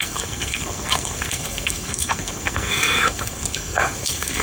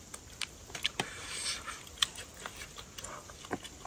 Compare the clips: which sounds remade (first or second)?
first